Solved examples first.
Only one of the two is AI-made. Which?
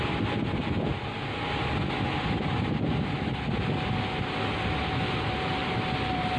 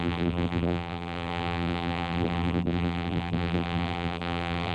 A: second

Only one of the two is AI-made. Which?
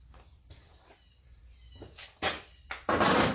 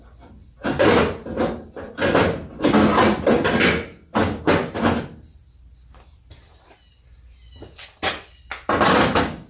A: first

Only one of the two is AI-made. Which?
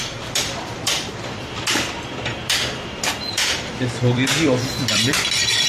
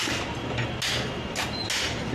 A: first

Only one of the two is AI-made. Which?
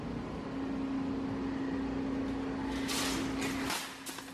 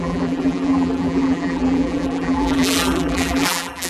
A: second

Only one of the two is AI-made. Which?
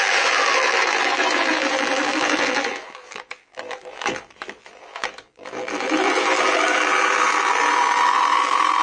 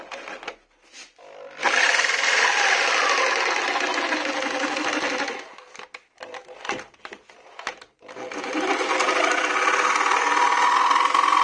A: first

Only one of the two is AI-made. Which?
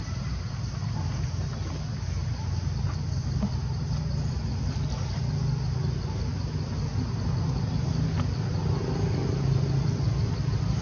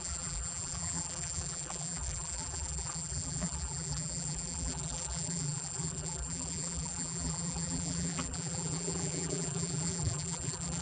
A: second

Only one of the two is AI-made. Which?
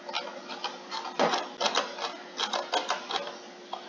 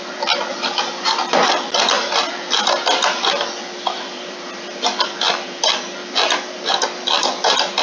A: second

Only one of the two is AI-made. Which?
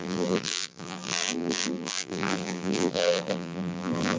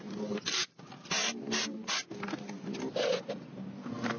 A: first